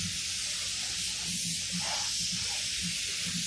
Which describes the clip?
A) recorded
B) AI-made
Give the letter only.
A